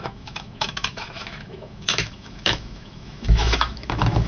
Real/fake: fake